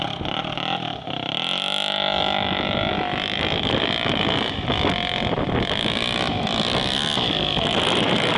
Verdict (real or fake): fake